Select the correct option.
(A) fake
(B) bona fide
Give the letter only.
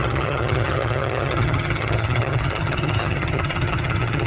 A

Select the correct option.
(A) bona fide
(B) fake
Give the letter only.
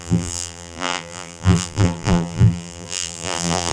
B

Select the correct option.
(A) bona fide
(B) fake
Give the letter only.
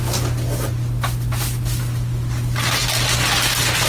A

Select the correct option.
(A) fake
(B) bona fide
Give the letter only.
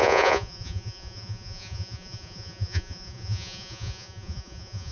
A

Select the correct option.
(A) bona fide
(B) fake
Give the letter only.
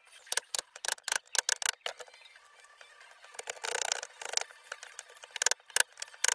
A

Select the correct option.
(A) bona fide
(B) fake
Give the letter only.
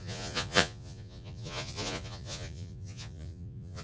B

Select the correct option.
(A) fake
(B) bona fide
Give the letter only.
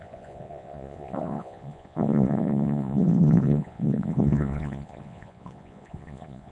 A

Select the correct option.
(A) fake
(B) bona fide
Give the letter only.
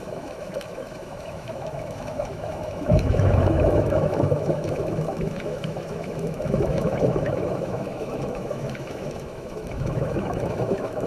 A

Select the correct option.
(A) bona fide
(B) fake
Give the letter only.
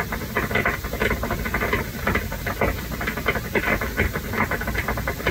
A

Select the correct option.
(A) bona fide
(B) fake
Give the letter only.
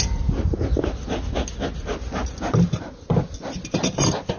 A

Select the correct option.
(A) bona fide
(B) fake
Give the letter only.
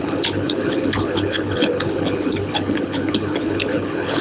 B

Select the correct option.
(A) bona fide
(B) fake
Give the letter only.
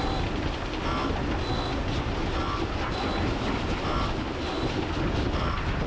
A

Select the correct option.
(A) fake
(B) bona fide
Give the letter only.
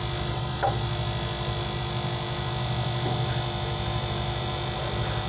B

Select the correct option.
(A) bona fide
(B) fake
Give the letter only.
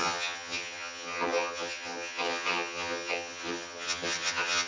B